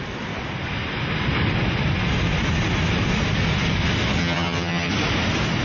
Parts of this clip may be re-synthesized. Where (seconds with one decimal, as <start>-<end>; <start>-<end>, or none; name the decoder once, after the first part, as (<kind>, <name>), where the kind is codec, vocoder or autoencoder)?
4.2-4.9 (vocoder, HiFi-GAN)